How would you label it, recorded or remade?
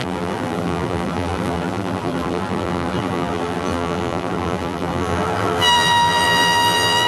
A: remade